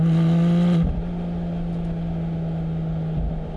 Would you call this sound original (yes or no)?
yes